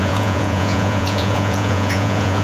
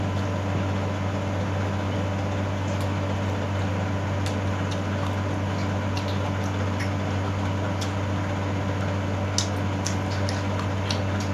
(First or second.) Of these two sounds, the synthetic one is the first